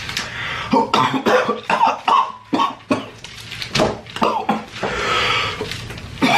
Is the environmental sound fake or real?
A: real